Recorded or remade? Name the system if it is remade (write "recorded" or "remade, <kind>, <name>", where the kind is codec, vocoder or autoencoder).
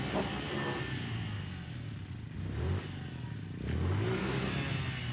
recorded